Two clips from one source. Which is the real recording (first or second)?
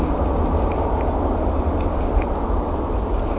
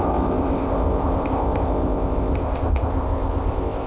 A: first